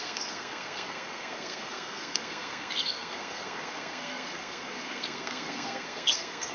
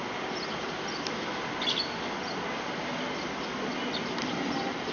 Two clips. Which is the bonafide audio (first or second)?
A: second